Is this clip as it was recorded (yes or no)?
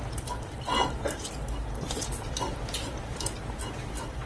yes